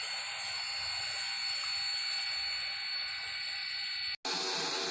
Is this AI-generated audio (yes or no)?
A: no